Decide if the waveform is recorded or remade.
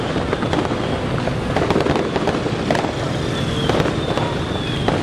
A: recorded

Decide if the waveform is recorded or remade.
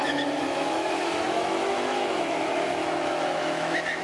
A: remade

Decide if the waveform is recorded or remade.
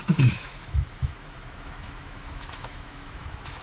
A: remade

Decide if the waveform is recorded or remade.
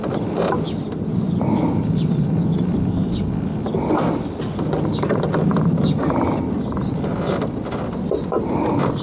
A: recorded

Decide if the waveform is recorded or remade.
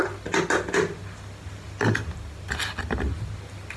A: recorded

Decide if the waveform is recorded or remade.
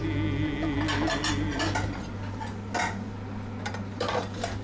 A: recorded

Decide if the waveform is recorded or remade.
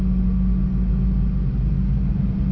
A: recorded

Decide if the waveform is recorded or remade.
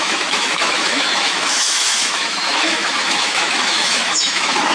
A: remade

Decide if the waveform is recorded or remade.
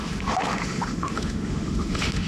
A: remade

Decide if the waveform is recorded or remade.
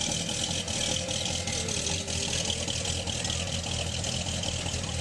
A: recorded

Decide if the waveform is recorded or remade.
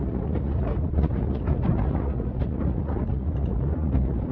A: remade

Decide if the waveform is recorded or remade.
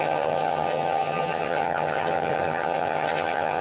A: remade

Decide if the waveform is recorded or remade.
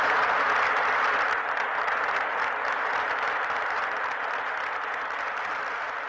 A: recorded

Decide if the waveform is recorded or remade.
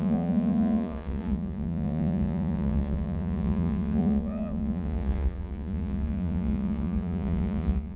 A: remade